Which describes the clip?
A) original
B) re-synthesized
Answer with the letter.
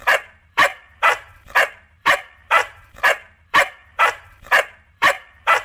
B